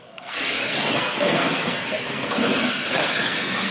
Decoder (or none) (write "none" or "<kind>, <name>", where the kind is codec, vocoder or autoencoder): codec, SNAC